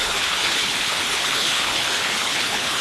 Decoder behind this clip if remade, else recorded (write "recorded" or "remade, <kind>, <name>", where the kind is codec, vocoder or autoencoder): remade, codec, HILCodec